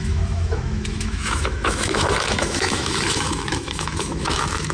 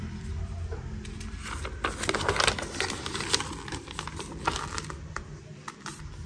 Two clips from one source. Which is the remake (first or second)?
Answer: first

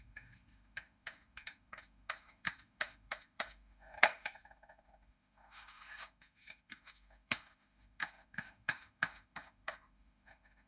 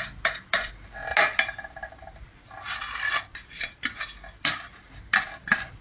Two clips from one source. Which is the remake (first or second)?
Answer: first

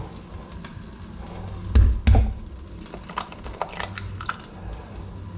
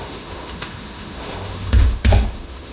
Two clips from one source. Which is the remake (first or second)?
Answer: second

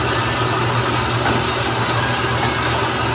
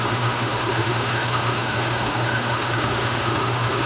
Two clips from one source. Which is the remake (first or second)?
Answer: second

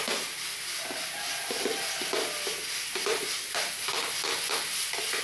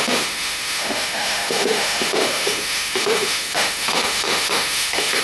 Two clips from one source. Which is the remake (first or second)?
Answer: second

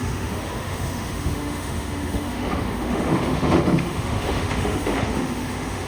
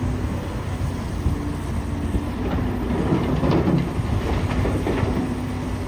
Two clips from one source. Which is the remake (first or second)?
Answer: first